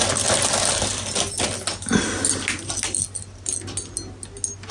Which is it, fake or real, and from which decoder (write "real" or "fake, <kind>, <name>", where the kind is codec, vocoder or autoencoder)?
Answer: real